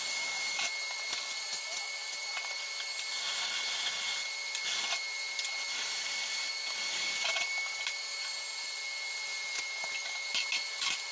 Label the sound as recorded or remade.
recorded